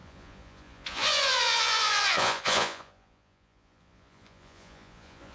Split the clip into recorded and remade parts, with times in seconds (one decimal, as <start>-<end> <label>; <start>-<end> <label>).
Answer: 0.0-5.3 remade

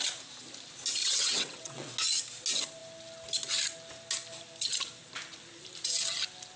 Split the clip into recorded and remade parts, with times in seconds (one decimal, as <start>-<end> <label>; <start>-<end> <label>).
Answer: 0.0-1.0 recorded; 1.0-1.9 remade; 1.9-6.6 recorded